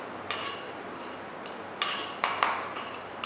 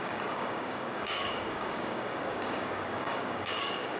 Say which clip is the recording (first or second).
first